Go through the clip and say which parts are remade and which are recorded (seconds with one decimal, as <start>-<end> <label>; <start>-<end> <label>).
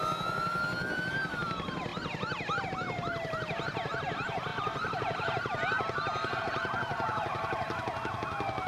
0.0-8.7 recorded